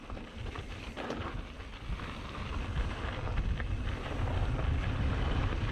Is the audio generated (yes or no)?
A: no